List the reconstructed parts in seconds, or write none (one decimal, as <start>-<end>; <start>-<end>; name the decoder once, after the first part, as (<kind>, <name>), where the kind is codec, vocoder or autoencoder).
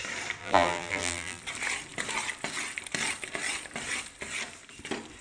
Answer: 0.4-1.4 (vocoder, BigVGAN v2)